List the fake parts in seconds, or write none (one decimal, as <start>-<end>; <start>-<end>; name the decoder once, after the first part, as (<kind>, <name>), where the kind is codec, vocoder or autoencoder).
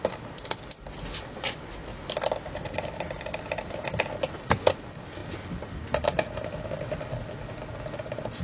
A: none